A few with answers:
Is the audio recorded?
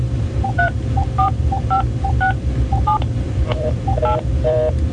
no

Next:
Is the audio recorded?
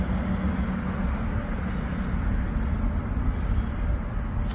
yes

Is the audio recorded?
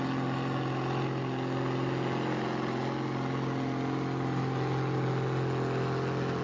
yes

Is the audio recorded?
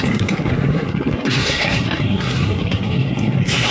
no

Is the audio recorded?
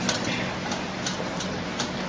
yes